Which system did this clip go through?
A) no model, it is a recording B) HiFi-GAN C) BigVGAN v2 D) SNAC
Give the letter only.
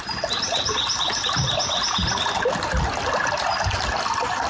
A